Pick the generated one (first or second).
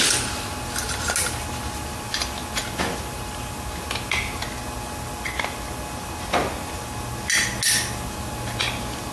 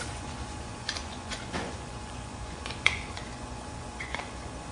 second